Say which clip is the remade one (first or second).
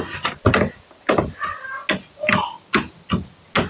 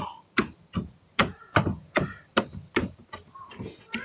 second